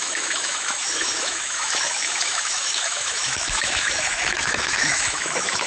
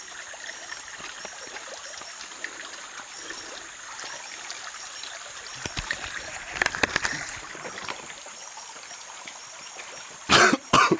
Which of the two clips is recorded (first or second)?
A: second